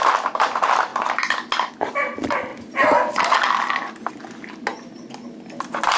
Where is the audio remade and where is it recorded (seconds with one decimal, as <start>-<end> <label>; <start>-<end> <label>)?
0.0-6.0 recorded